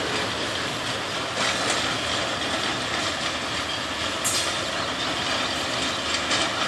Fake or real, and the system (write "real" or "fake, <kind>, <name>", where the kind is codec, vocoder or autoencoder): real